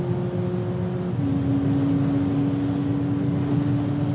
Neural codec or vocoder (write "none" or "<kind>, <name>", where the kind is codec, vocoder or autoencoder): none